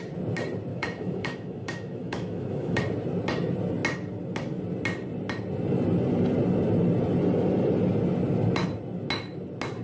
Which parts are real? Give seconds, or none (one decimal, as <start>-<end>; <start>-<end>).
0.0-0.7; 2.8-9.8